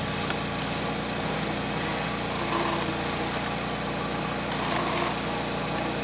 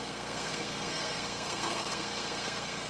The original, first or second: first